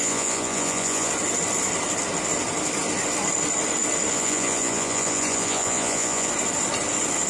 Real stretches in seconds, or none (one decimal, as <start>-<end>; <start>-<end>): 1.1-4.1; 6.3-7.3